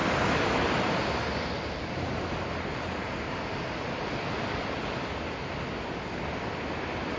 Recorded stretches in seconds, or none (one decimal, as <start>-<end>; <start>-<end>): 3.0-7.2